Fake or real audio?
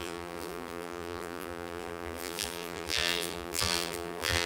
fake